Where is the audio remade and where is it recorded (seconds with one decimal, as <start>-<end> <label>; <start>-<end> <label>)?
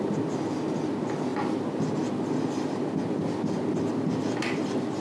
0.0-5.0 recorded